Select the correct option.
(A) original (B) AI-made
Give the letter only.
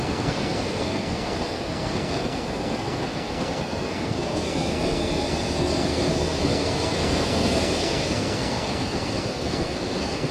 B